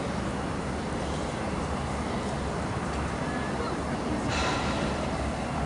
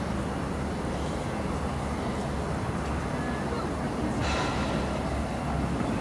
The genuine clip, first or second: second